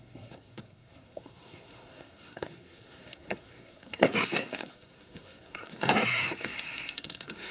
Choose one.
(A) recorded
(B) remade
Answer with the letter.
B